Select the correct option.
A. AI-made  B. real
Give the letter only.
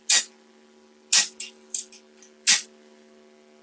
B